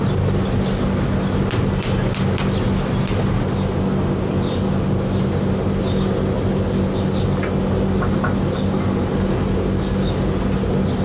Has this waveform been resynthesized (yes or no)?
no